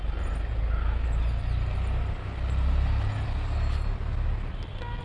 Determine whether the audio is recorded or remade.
recorded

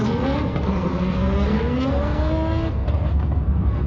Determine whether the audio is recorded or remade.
remade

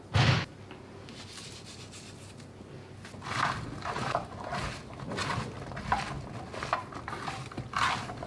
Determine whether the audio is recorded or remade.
recorded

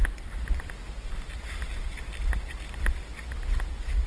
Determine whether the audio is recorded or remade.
recorded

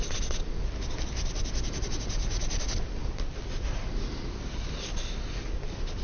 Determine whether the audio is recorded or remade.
recorded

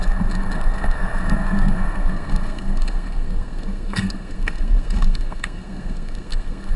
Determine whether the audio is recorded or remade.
remade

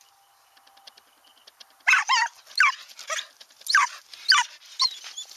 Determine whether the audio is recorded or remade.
recorded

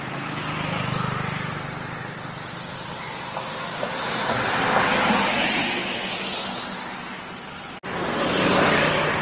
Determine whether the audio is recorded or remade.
recorded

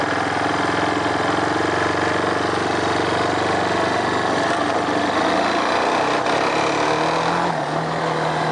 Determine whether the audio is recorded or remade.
recorded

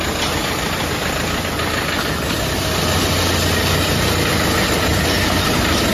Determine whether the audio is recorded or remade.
recorded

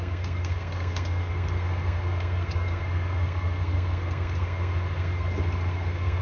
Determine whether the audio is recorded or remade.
remade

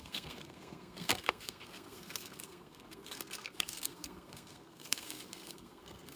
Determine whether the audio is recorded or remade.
remade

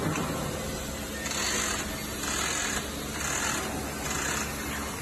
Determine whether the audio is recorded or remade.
recorded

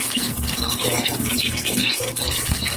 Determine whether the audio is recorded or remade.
remade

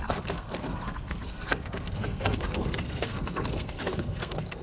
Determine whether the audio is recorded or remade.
remade